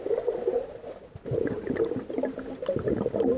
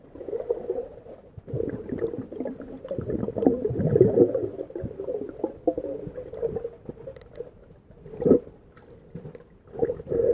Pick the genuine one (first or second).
first